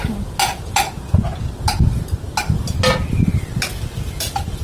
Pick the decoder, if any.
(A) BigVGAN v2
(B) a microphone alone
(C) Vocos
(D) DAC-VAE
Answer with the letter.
B